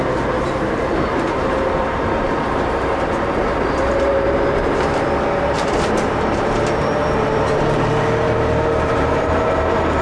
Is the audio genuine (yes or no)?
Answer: no